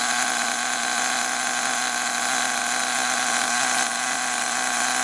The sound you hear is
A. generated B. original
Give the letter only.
B